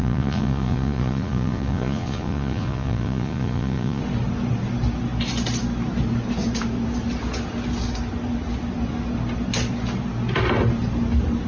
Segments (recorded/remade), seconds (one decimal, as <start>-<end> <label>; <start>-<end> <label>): 0.0-4.0 remade; 4.0-11.5 recorded